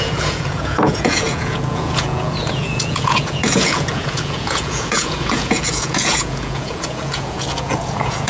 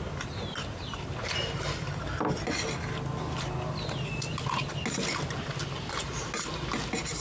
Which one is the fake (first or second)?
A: first